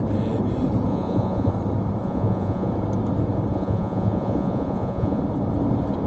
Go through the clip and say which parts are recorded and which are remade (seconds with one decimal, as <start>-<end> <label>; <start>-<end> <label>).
0.0-0.9 recorded; 0.9-1.5 remade; 1.5-2.0 recorded; 2.0-2.7 remade; 2.7-3.5 recorded; 3.5-5.2 remade; 5.2-6.1 recorded